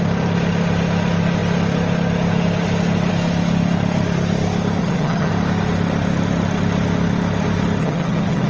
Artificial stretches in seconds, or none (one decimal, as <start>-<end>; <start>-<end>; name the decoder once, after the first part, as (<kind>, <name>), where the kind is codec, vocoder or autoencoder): 4.8-5.3 (vocoder, HiFi-GAN); 7.8-8.5